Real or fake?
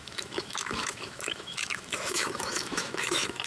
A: fake